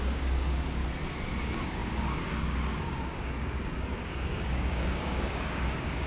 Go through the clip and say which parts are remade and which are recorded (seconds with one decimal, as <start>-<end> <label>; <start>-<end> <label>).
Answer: 0.0-0.8 remade; 0.8-1.4 recorded; 1.4-6.1 remade